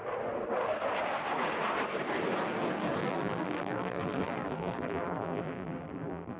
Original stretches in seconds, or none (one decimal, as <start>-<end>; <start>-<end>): 0.0-3.0